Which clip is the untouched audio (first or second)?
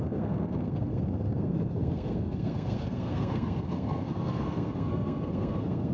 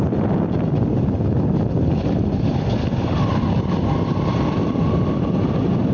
second